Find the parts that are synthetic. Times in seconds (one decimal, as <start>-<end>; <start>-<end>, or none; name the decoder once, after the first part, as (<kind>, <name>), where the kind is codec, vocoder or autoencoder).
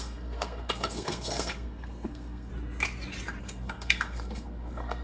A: 0.0-2.5 (codec, SNAC); 3.4-5.0